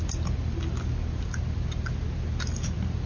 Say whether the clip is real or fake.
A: real